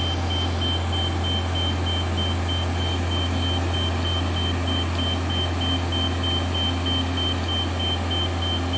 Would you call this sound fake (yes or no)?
no